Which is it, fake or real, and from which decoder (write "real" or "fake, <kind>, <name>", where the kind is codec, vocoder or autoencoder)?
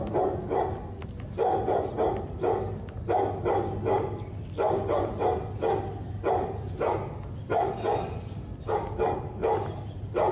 real